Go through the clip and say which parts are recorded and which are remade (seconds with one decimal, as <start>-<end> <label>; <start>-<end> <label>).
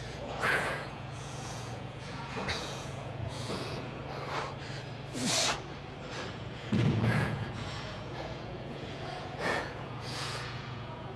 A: 0.0-4.0 remade; 4.0-6.3 recorded; 6.3-11.2 remade